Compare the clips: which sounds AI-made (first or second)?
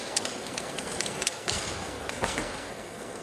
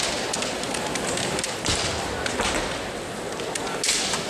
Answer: first